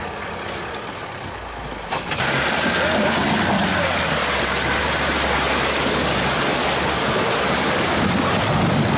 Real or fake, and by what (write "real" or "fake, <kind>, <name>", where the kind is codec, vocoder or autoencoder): real